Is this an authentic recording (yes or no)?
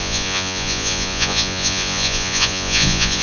no